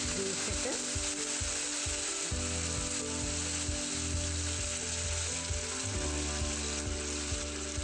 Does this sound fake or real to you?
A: real